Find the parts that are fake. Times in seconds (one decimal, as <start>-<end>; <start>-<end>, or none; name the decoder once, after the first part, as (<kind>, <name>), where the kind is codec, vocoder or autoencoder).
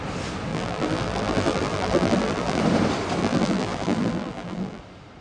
0.5-2.6 (vocoder, BigVGAN v2); 3.2-4.8